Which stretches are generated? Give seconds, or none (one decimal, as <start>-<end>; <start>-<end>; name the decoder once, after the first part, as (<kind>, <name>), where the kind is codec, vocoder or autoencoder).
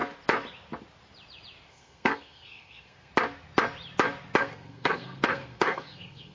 1.7-3.1 (codec, SNAC); 4.4-6.3